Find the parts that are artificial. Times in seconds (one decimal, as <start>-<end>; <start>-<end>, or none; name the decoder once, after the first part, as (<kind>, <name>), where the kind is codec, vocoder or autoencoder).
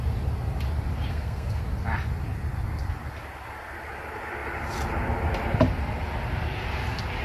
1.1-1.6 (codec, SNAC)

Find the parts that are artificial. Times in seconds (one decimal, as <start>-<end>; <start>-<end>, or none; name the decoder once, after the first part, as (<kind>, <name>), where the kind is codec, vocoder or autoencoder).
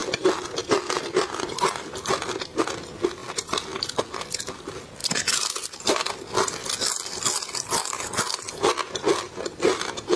none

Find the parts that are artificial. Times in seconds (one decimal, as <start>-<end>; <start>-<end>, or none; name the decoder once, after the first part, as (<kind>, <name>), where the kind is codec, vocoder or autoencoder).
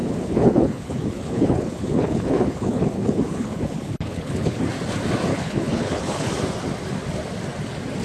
0.0-4.6 (codec, HILCodec); 5.3-6.3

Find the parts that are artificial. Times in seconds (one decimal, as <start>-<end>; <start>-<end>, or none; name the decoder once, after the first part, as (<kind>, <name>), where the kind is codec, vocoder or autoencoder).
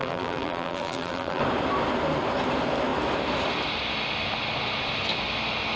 0.0-1.4 (vocoder, BigVGAN v2)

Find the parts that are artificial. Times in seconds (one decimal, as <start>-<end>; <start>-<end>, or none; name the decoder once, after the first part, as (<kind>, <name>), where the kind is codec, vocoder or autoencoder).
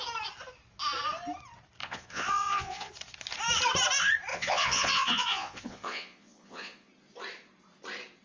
1.8-2.9 (vocoder, Vocos); 4.3-6.9